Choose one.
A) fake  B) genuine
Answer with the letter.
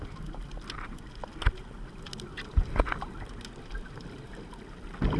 B